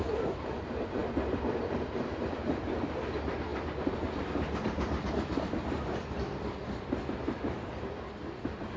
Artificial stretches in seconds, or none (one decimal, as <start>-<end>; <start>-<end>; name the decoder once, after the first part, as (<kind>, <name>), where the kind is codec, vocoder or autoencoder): 1.0-2.5 (vocoder, BigVGAN v2)